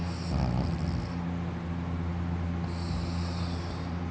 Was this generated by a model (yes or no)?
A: no